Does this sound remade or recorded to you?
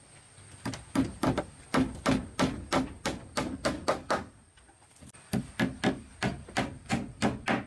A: recorded